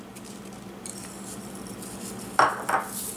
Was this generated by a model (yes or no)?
no